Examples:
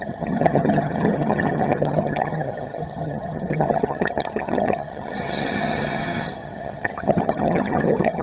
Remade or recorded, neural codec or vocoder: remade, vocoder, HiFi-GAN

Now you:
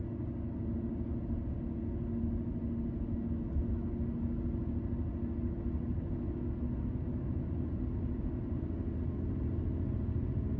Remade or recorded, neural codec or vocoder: recorded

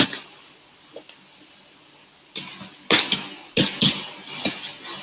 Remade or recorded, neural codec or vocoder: recorded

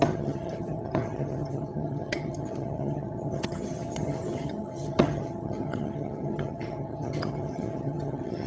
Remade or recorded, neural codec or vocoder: remade, vocoder, HiFi-GAN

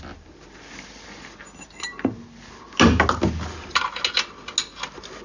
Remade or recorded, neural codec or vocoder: recorded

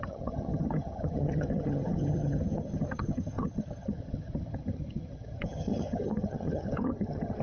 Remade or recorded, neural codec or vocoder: remade, vocoder, HiFi-GAN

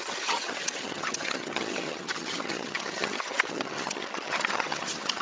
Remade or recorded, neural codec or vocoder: remade, vocoder, HiFi-GAN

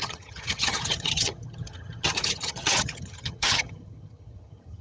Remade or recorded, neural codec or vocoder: remade, vocoder, HiFi-GAN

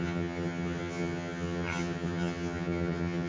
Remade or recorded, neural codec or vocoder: remade, vocoder, HiFi-GAN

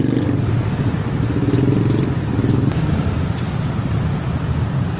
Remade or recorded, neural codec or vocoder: recorded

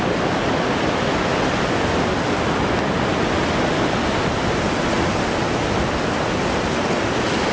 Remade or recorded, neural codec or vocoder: recorded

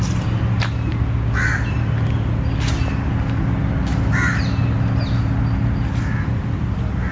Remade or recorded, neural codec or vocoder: recorded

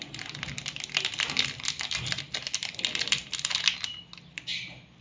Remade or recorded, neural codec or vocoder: recorded